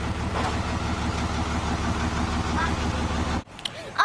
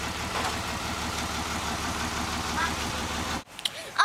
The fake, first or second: second